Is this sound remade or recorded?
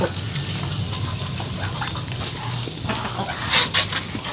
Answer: recorded